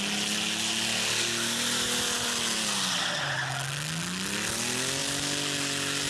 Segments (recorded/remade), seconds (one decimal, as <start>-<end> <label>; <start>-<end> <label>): 0.0-6.1 recorded